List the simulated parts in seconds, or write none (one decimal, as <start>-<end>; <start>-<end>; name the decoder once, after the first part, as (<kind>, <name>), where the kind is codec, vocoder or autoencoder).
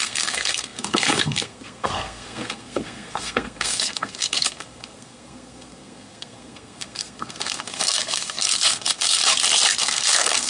0.0-9.2 (codec, SNAC); 9.8-10.5